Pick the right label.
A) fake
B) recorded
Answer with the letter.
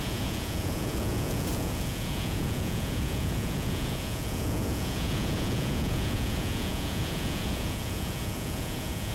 A